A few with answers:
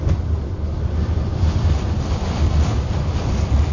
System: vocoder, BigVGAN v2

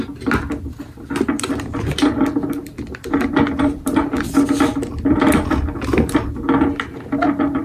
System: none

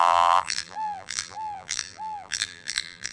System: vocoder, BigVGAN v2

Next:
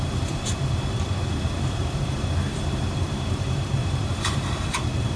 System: vocoder, BigVGAN v2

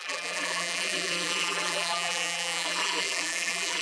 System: vocoder, BigVGAN v2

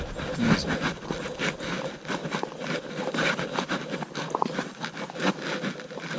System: none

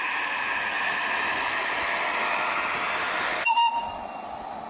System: none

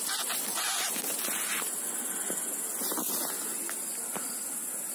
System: none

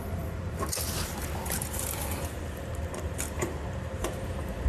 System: vocoder, BigVGAN v2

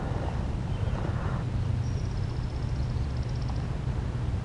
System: none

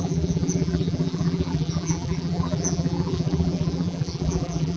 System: vocoder, BigVGAN v2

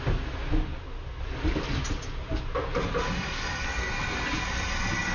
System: none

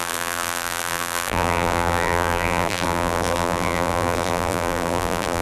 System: vocoder, BigVGAN v2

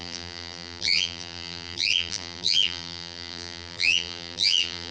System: vocoder, BigVGAN v2